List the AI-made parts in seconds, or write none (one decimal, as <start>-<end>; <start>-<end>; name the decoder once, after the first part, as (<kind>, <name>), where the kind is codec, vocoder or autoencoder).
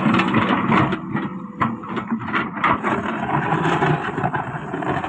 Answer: 1.3-4.4 (vocoder, BigVGAN v2)